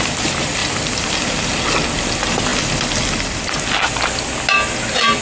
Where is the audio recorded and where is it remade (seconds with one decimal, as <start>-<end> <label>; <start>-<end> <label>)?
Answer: 0.0-0.6 recorded; 0.6-1.1 remade; 1.1-2.5 recorded; 2.5-4.0 remade; 4.0-5.2 recorded